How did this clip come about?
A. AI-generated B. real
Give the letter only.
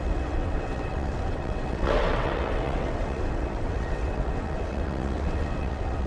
A